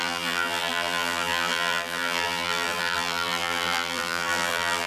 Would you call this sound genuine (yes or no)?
no